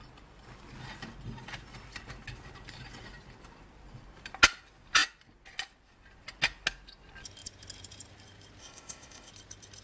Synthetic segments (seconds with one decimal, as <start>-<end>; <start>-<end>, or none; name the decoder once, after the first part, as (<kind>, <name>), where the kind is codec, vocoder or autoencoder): 8.6-9.3 (codec, ZipCodec)